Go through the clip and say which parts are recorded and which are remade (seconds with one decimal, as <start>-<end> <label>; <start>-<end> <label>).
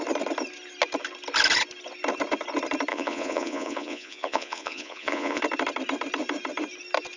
0.0-2.9 recorded; 2.9-5.4 remade; 5.4-7.2 recorded